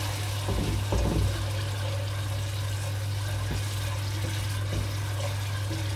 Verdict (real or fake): real